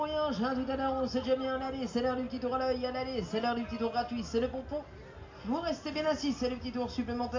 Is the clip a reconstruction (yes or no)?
no